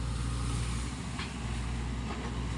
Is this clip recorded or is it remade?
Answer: recorded